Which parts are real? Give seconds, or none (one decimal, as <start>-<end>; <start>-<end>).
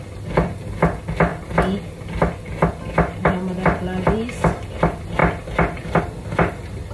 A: 0.0-6.9